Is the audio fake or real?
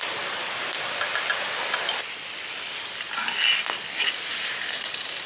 real